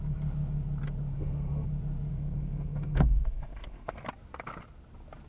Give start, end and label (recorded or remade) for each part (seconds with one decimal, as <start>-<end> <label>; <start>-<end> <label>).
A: 0.0-1.1 recorded; 1.1-1.7 remade; 1.7-2.1 recorded; 2.1-4.0 remade; 4.0-5.3 recorded